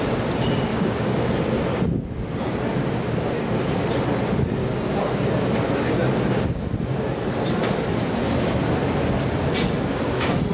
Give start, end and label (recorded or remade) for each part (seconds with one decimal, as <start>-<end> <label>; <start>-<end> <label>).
0.0-0.7 recorded; 0.7-1.3 remade; 1.3-10.5 recorded